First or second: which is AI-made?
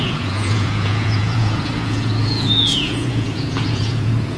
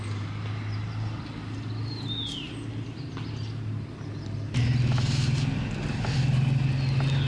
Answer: first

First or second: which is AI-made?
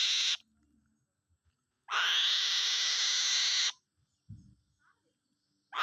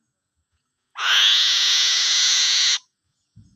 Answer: second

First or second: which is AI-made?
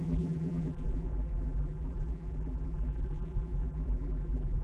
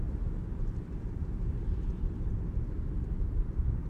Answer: first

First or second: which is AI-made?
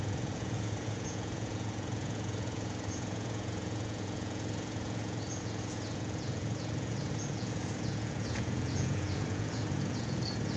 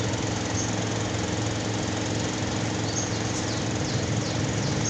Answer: first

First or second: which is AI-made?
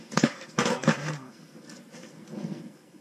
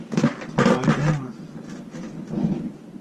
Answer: first